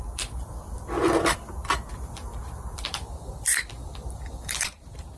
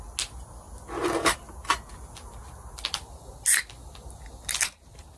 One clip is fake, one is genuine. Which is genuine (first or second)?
second